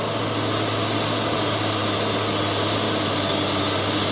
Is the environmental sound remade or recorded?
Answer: recorded